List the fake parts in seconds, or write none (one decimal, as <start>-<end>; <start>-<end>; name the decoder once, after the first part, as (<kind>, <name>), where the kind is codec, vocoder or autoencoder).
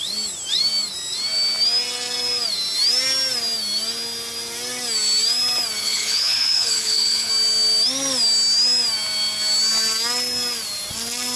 5.8-7.3 (codec, HILCodec)